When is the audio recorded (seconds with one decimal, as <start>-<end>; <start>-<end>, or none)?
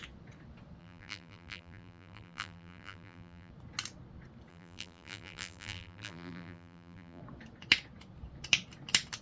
0.0-0.8; 3.5-4.5; 7.2-9.2